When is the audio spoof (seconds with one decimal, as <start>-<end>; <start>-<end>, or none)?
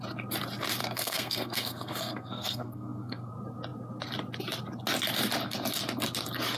0.8-3.3